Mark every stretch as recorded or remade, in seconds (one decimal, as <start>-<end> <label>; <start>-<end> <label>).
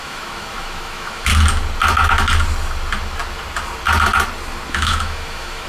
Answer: 0.0-1.3 remade; 1.3-4.7 recorded; 4.7-5.7 remade